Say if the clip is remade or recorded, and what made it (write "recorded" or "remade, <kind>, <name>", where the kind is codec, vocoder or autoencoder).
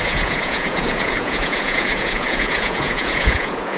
remade, vocoder, Vocos